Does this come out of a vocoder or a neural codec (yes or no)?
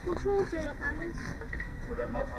yes